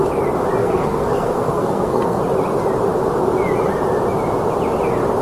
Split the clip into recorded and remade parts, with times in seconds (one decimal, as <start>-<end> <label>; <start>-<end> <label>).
0.0-0.6 recorded; 0.6-2.2 remade; 2.2-5.2 recorded